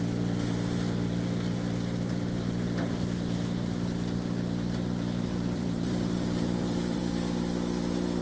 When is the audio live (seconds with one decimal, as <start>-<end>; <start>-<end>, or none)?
0.0-5.3; 7.0-8.2